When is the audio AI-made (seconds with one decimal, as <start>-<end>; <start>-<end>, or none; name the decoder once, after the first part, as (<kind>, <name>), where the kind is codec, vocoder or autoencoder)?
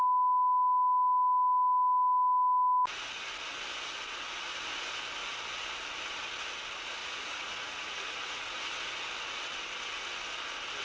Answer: 7.0-8.4 (vocoder, Vocos)